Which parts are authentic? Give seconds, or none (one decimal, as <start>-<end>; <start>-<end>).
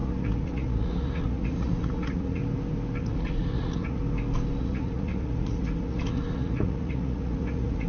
2.4-3.0; 4.0-4.6